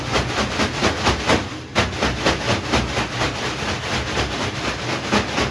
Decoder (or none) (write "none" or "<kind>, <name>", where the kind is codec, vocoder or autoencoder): none